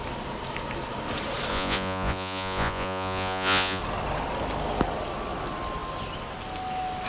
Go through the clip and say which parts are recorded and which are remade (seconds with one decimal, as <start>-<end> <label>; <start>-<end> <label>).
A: 0.0-1.5 recorded; 1.5-3.8 remade; 3.8-7.1 recorded